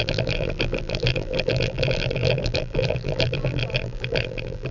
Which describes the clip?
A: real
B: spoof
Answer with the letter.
B